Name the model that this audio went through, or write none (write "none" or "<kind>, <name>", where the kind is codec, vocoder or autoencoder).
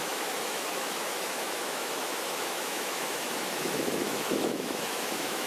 autoencoder, DAC-VAE